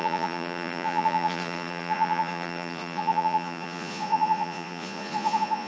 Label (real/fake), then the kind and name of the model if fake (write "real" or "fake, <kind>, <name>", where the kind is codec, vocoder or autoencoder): fake, vocoder, Vocos